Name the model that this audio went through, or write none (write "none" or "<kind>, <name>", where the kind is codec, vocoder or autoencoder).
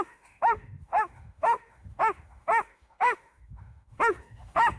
autoencoder, DAC-VAE